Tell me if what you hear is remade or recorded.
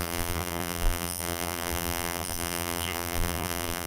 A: remade